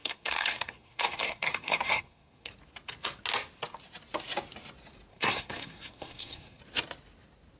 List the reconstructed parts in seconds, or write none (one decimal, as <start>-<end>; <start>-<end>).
0.0-2.5; 5.1-6.6